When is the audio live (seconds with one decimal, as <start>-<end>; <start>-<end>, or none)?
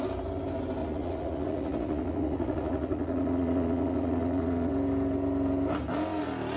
0.0-0.8; 4.7-6.6